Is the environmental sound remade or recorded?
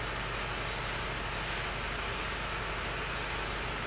recorded